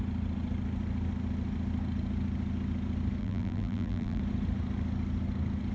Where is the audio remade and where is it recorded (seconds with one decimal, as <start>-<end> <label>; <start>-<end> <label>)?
0.0-3.2 recorded; 3.2-4.2 remade; 4.2-5.7 recorded